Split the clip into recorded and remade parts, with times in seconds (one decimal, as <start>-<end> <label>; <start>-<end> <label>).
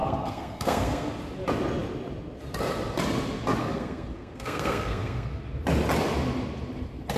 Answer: 0.0-1.1 remade; 1.1-3.6 recorded; 3.6-5.3 remade; 5.3-7.2 recorded